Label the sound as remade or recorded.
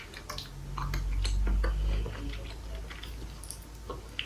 recorded